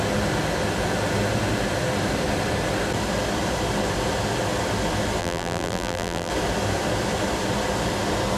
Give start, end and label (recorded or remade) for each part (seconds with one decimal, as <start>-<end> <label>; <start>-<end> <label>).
0.0-5.2 recorded; 5.2-6.3 remade; 6.3-8.4 recorded